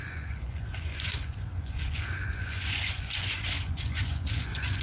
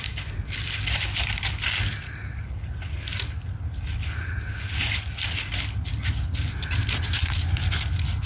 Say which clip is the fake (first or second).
first